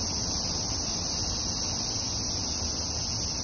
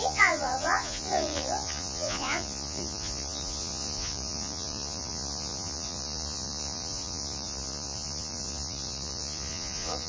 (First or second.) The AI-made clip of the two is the second